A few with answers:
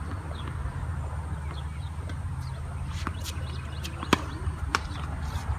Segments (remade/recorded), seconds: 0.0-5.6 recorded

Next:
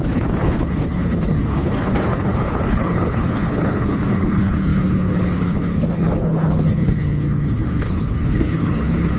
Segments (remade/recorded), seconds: 0.0-9.2 remade

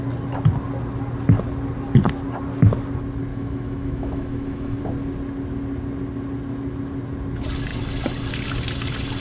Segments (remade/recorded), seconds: 0.0-3.3 recorded; 3.3-4.8 remade; 4.8-9.2 recorded

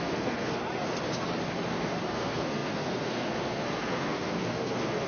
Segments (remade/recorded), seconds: 0.0-0.6 remade; 0.6-2.1 recorded; 2.1-5.1 remade